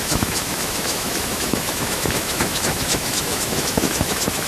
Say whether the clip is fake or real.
fake